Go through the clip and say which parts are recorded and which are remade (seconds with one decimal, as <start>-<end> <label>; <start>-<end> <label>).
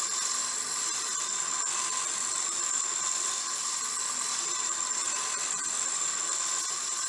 0.0-7.1 recorded